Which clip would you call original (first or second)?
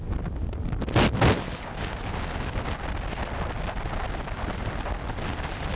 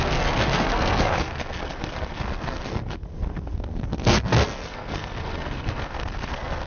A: first